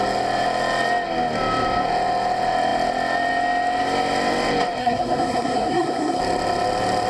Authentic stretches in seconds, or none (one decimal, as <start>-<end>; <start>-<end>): 0.0-4.8; 6.2-7.1